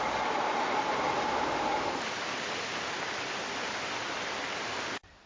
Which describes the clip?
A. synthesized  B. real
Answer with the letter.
B